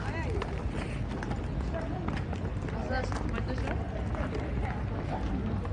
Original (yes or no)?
yes